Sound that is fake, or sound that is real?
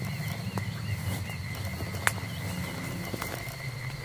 real